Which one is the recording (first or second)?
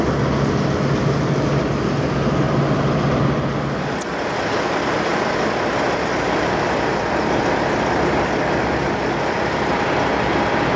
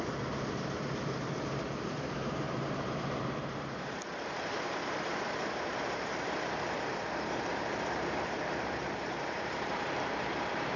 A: first